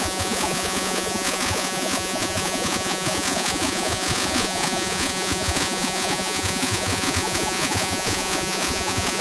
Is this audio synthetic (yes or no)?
yes